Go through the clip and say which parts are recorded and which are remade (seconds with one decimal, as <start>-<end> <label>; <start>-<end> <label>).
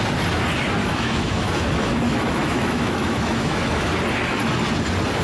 0.0-0.8 recorded; 0.8-3.9 remade; 3.9-5.2 recorded